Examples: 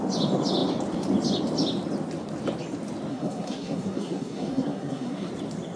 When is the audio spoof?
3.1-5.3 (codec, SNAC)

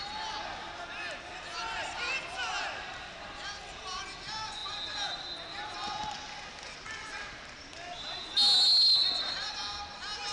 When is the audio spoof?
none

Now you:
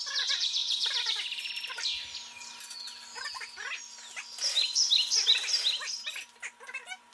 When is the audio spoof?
0.6-1.5 (vocoder, BigVGAN v2)

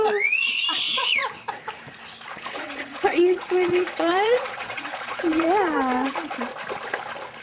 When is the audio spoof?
0.0-1.2 (vocoder, Vocos); 2.3-6.5

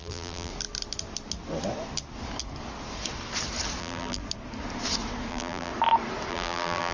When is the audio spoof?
0.0-0.5 (vocoder, BigVGAN v2); 3.8-4.2; 5.3-5.7; 6.3-6.9

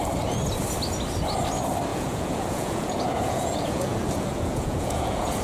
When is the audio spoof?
1.9-5.4 (vocoder, Vocos)

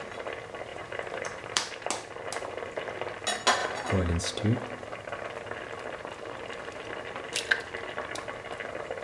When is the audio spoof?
0.7-1.9 (vocoder, BigVGAN v2); 3.6-4.2

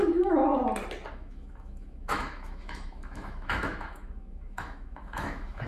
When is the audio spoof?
0.0-0.4 (autoencoder, DAC-VAE); 1.1-5.7